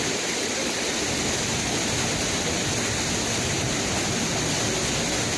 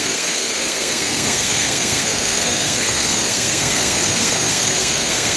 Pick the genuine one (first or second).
first